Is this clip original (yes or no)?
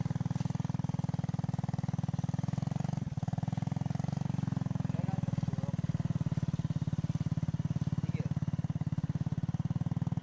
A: yes